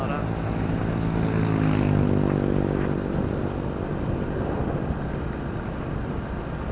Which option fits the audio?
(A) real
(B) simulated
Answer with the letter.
A